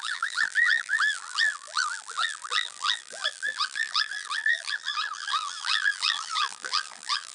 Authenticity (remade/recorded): remade